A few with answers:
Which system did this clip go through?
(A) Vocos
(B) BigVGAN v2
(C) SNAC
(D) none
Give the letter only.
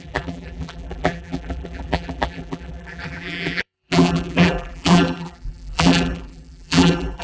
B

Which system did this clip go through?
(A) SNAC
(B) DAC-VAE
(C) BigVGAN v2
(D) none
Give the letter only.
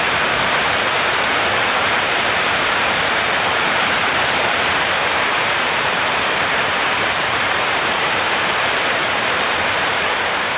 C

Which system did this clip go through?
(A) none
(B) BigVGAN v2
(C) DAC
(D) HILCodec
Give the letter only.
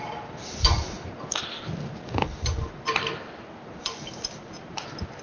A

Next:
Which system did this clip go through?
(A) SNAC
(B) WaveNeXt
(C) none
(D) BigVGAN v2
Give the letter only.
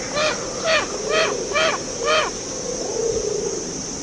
C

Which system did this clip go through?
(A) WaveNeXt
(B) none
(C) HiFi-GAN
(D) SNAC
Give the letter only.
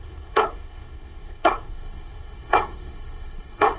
D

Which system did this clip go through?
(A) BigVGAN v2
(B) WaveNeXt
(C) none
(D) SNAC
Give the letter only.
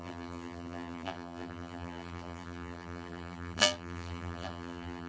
A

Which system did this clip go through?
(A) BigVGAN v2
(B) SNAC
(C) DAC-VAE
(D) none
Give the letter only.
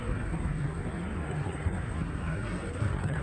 B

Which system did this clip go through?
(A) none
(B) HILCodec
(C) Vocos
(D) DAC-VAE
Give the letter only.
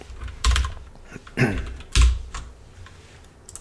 A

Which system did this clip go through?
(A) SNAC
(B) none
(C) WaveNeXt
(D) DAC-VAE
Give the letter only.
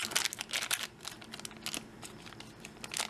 B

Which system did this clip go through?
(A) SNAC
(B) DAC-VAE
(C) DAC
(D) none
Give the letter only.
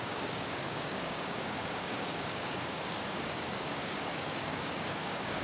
C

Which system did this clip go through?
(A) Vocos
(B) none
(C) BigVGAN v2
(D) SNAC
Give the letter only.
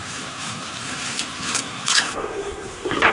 D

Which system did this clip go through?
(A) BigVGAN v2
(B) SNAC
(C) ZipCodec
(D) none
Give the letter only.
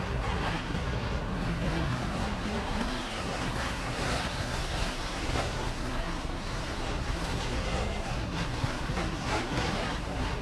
B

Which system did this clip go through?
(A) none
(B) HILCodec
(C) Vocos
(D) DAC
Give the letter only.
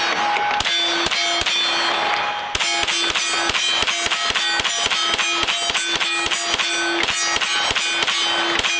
A